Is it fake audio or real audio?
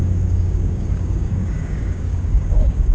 fake